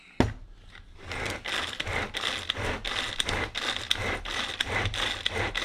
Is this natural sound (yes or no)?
yes